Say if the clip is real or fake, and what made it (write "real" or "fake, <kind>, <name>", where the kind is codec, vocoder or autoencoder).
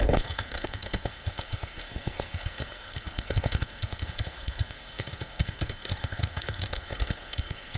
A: fake, codec, SNAC